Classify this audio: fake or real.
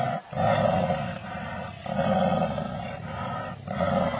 real